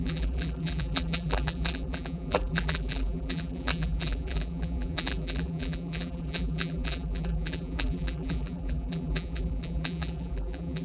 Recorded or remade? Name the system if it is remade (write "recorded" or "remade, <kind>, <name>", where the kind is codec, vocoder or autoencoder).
remade, vocoder, BigVGAN v2